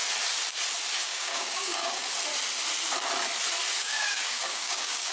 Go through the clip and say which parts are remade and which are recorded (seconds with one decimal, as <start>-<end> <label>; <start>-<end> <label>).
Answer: 0.0-1.0 recorded; 1.0-2.0 remade; 2.0-3.8 recorded; 3.8-5.1 remade